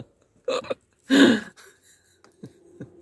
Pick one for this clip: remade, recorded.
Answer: recorded